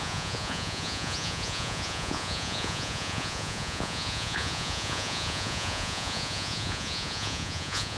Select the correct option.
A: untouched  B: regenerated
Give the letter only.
B